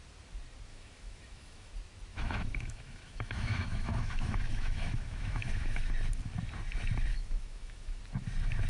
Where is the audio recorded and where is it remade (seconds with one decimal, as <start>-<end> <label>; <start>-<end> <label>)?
0.0-0.7 recorded; 0.7-1.7 remade; 1.7-2.1 recorded; 2.1-5.9 remade; 5.9-7.1 recorded; 7.1-8.0 remade; 8.0-8.7 recorded